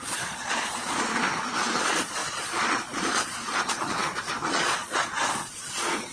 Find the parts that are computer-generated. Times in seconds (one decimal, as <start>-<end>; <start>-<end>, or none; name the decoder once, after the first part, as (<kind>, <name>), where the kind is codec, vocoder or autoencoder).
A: 0.0-1.1 (vocoder, Vocos); 1.8-6.1